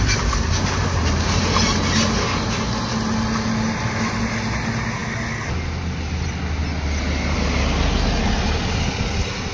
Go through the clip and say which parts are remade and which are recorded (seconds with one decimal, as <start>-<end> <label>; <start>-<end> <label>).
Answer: 0.0-9.5 recorded